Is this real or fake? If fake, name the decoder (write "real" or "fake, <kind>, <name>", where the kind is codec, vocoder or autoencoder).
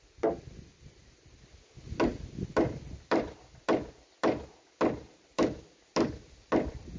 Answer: real